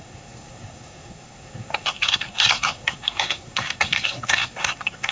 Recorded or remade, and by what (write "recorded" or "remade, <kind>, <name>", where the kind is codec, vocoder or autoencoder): remade, codec, SNAC